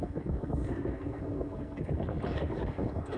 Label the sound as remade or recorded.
remade